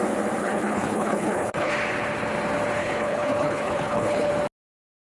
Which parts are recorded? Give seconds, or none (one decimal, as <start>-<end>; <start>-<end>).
0.0-0.4; 1.7-2.8; 4.3-5.1